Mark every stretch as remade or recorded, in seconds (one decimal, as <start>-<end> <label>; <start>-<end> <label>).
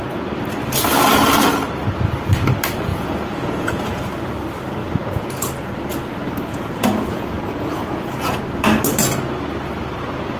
0.0-2.9 recorded; 2.9-4.0 remade; 4.0-4.8 recorded; 4.8-5.5 remade; 5.5-6.5 recorded; 6.5-8.4 remade; 8.4-10.4 recorded